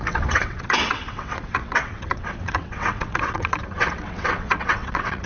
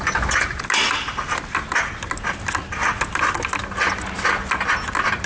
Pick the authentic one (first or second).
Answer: second